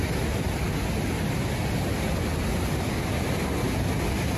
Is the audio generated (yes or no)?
no